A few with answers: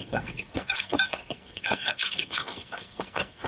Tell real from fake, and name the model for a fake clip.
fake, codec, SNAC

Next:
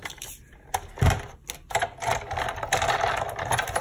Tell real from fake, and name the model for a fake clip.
real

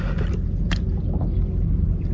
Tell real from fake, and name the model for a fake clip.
real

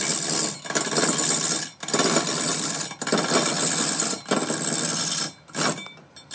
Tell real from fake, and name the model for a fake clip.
real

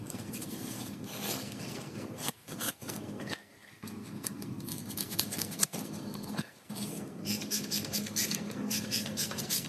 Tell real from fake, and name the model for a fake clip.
fake, codec, SNAC